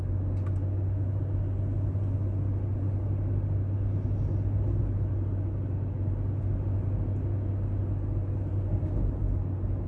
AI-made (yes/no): no